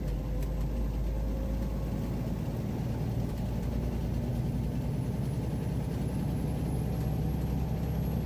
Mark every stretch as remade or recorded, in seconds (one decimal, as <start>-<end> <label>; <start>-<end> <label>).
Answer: 0.0-8.3 recorded